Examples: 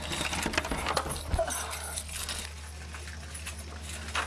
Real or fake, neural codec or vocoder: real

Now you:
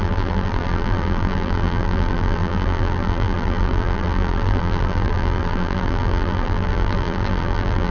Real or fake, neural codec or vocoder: fake, vocoder, BigVGAN v2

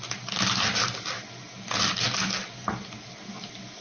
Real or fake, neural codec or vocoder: real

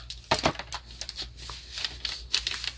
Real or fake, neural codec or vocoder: real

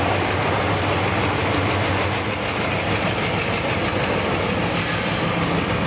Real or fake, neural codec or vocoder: real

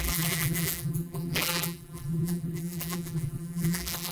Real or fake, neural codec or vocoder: fake, vocoder, BigVGAN v2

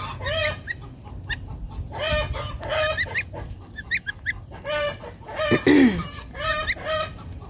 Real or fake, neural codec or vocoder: real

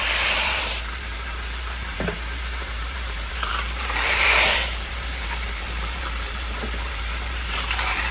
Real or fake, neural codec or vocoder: fake, vocoder, BigVGAN v2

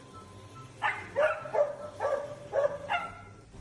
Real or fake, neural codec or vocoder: real